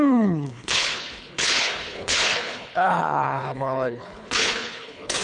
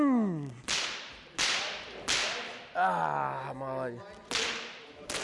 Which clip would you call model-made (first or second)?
first